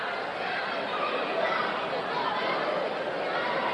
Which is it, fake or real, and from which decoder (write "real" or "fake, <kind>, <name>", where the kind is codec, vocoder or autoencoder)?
fake, vocoder, BigVGAN v2